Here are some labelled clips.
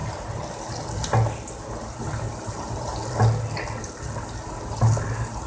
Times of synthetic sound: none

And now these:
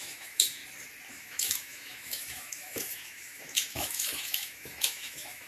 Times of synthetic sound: 0.0-0.6 (autoencoder, DAC-VAE); 1.1-5.5

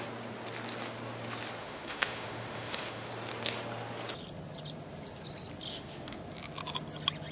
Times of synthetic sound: 1.6-3.1 (autoencoder, DAC-VAE); 5.7-6.2